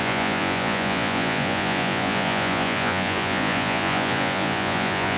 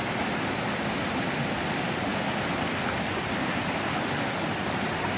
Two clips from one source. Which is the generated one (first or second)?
first